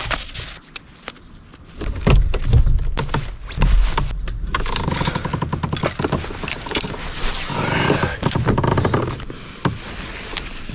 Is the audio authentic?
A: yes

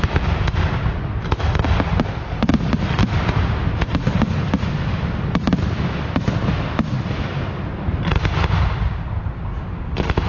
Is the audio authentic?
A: yes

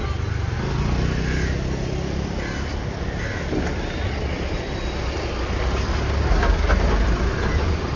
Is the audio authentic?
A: yes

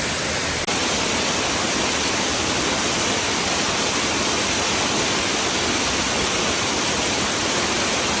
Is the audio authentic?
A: yes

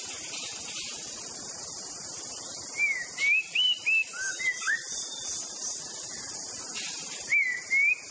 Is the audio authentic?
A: yes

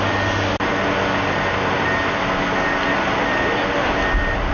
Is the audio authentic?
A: yes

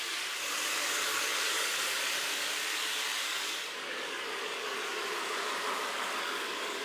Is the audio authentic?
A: no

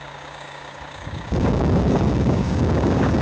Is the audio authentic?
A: no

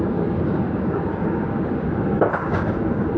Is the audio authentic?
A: no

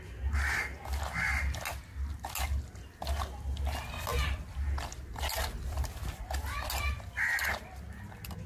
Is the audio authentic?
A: yes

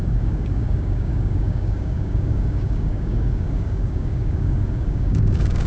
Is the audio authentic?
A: no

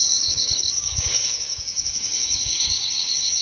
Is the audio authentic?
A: no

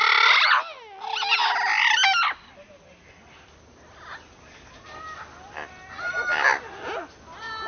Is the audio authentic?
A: yes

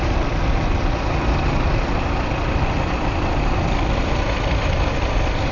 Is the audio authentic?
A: yes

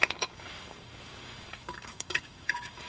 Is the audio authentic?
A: no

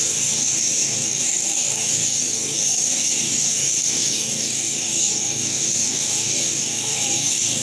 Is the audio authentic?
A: no